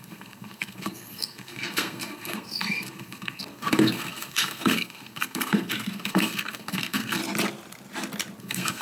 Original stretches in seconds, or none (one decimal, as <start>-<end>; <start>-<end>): 7.2-8.4

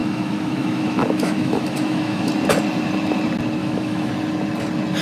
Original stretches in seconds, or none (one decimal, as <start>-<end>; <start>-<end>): 2.3-3.6; 4.1-5.0

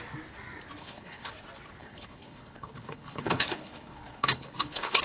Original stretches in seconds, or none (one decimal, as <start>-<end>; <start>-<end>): 0.0-0.8; 1.3-1.8

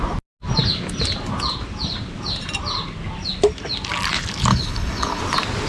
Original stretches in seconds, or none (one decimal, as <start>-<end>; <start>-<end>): 0.0-4.5; 5.2-5.7